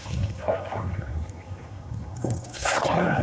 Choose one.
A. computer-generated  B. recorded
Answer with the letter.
A